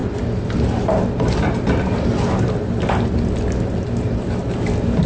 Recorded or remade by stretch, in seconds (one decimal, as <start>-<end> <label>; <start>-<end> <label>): 0.0-5.1 recorded